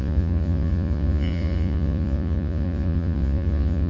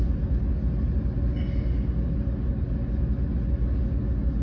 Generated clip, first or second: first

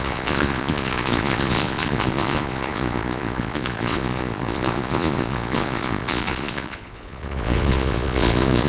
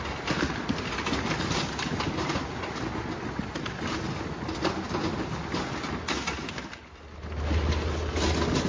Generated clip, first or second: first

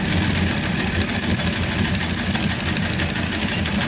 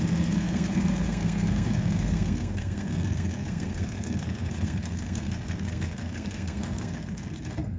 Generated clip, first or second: second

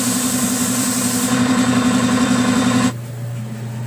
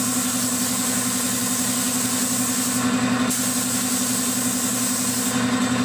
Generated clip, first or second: first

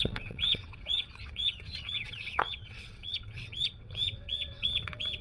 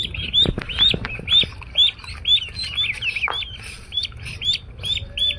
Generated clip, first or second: first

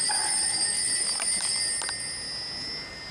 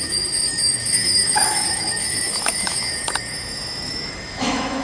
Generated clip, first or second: second